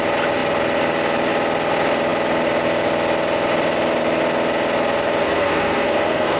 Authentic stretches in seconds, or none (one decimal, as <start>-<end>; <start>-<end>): 0.0-5.2